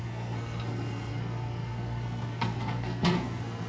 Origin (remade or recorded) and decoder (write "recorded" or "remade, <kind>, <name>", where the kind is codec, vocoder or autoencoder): remade, codec, SNAC